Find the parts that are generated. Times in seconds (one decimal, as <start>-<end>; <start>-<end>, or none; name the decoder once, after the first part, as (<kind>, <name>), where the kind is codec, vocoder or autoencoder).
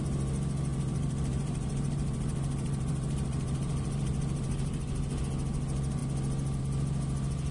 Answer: 0.7-5.2 (vocoder, BigVGAN v2)